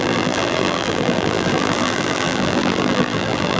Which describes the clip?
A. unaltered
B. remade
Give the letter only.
B